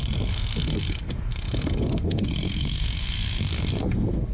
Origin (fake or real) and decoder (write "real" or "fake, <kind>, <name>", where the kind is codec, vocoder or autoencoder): fake, codec, SNAC